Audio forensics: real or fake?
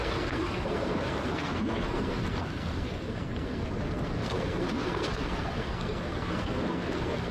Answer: fake